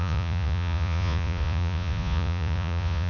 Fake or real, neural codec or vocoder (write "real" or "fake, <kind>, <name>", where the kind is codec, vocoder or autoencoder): fake, vocoder, Vocos